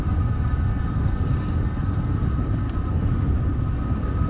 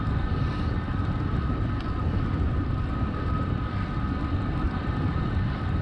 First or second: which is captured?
first